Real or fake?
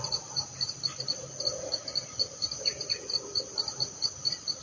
real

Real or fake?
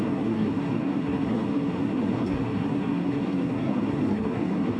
fake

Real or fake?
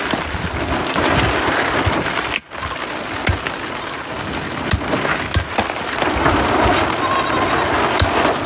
real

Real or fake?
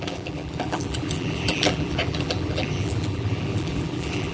fake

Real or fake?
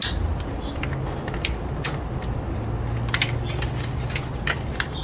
real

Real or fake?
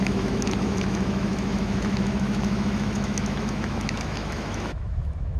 fake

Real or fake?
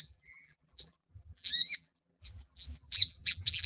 fake